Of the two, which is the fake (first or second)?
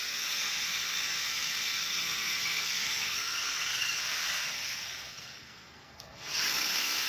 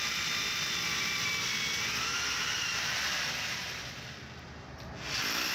first